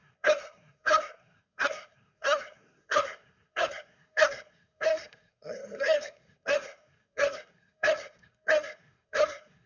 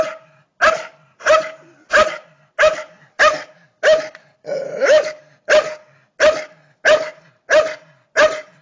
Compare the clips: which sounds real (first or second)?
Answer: second